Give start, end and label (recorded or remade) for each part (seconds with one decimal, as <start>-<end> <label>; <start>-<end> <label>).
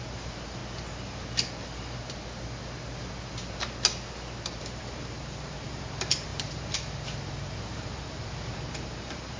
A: 0.0-0.6 remade; 0.6-4.5 recorded; 4.5-9.4 remade